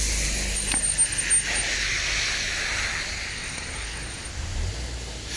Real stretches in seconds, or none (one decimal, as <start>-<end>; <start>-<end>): 0.0-3.3; 4.3-5.4